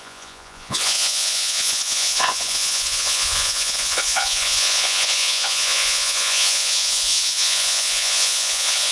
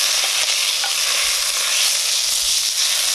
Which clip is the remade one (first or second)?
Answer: first